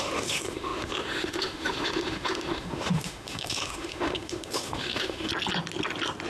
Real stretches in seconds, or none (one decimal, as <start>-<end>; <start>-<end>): 5.3-6.3